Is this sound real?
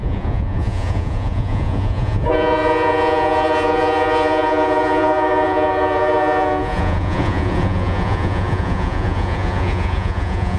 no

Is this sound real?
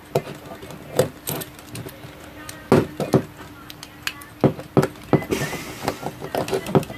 yes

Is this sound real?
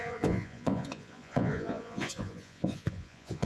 no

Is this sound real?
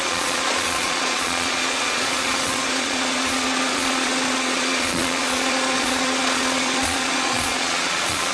no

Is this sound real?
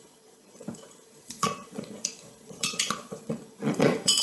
no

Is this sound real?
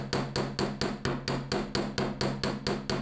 yes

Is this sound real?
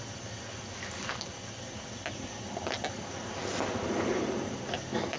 yes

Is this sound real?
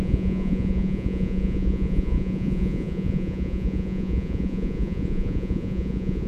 no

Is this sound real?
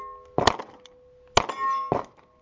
yes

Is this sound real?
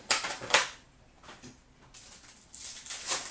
yes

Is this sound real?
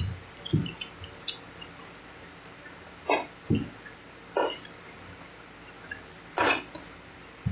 yes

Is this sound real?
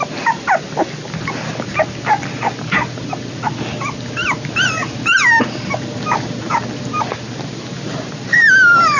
yes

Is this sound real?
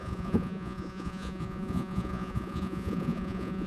no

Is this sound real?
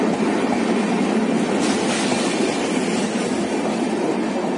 yes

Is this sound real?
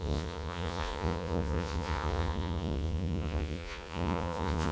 no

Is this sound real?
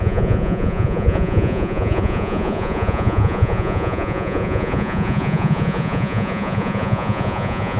no